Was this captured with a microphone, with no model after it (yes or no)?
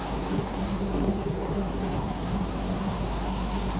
no